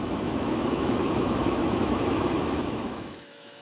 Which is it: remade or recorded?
remade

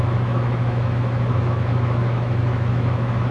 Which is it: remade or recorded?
remade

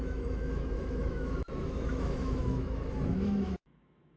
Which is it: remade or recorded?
remade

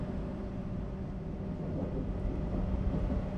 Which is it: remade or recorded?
recorded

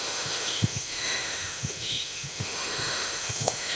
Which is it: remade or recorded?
remade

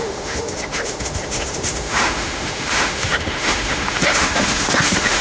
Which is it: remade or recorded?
remade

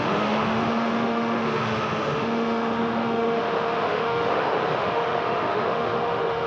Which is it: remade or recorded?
remade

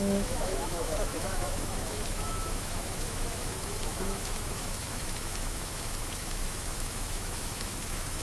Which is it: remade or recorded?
remade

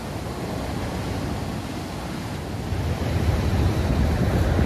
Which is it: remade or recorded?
recorded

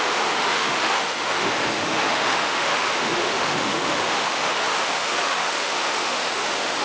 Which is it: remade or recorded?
remade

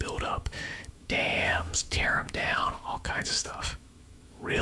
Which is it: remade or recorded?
remade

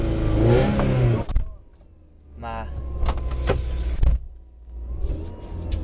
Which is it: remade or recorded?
recorded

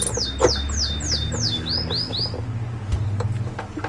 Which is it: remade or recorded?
recorded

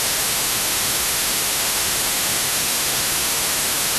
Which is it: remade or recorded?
remade